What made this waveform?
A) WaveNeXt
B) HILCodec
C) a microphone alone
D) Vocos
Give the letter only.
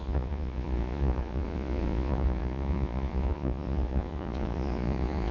D